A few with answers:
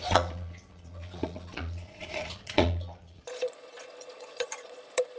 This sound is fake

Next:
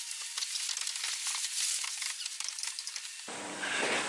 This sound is real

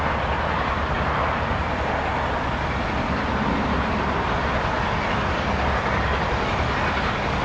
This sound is real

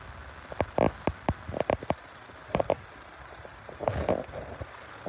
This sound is real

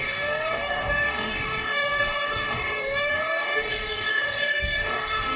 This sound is fake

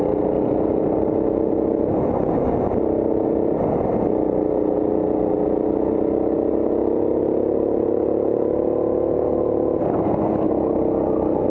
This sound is real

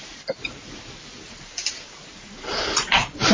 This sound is real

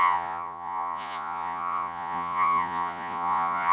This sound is fake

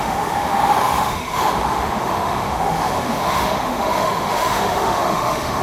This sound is fake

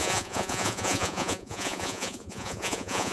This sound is fake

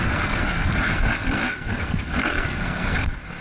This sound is fake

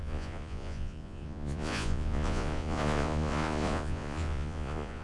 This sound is fake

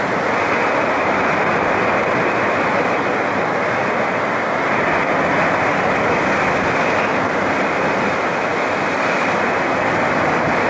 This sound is real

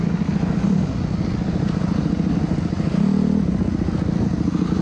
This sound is real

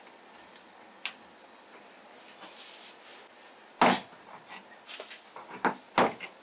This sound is real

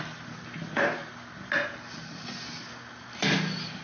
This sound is real